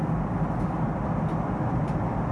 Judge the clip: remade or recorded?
recorded